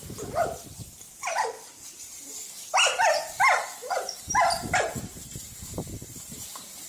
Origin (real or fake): real